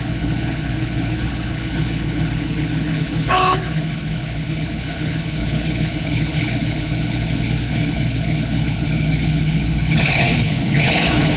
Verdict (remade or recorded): remade